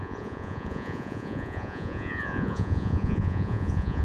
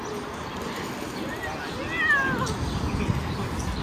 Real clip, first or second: second